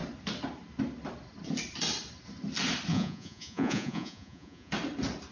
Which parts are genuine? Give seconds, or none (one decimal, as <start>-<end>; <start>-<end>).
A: 0.0-2.9; 4.7-5.3